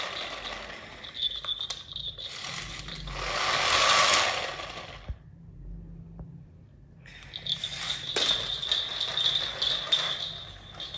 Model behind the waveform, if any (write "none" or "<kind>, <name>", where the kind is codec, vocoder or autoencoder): none